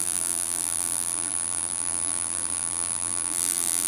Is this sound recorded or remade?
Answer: remade